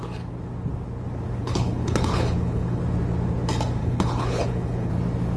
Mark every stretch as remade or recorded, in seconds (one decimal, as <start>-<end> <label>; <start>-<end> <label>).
0.0-1.4 recorded; 1.4-2.8 remade; 2.8-3.8 recorded; 3.8-4.9 remade; 4.9-5.4 recorded